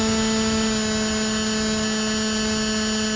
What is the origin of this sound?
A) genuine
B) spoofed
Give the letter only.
A